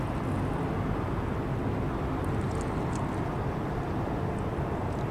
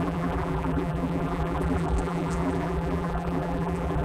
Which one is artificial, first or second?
second